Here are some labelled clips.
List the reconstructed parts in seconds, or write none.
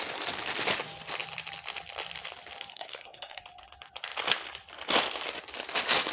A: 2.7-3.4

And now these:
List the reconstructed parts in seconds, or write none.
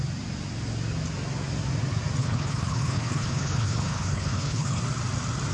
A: 2.2-4.8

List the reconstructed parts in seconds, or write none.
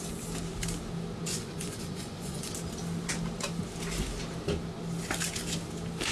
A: 1.3-2.5